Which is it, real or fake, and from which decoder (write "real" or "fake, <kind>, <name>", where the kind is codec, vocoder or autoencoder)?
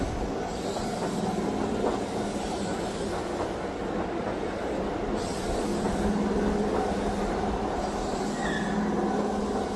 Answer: real